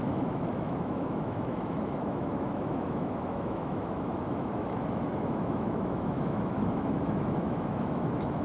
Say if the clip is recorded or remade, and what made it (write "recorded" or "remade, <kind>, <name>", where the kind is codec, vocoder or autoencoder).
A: remade, autoencoder, DAC-VAE